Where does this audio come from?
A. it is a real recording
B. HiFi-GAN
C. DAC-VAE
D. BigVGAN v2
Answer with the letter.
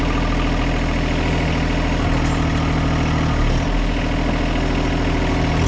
A